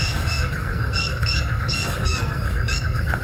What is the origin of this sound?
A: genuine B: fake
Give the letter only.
B